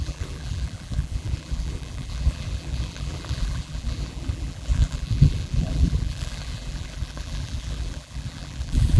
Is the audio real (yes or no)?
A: no